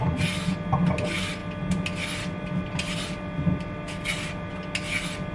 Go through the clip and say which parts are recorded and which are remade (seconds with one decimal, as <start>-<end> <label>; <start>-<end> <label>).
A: 0.0-5.3 recorded